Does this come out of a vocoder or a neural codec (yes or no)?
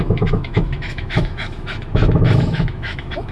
yes